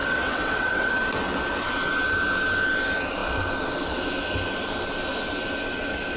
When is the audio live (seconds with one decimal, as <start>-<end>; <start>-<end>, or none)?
0.9-6.2